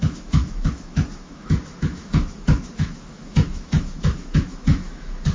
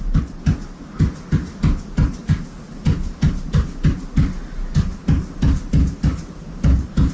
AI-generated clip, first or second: first